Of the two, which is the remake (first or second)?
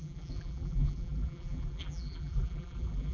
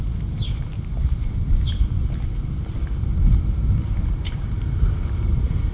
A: first